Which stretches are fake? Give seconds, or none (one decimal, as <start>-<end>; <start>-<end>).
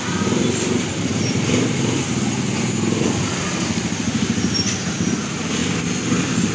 none